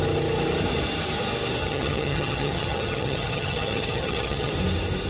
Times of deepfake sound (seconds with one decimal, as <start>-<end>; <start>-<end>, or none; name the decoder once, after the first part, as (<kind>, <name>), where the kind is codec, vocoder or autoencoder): 1.6-4.5 (vocoder, HiFi-GAN)